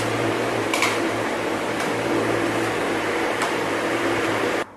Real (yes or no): no